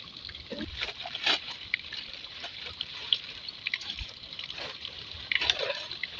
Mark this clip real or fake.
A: fake